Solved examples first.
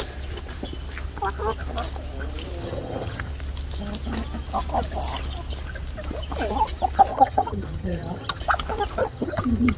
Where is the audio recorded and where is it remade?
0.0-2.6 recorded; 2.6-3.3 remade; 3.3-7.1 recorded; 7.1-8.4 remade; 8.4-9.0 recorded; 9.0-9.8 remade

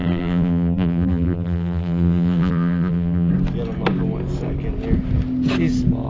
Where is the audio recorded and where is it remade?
0.0-3.3 remade; 3.3-6.1 recorded